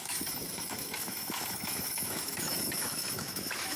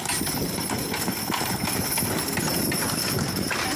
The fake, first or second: first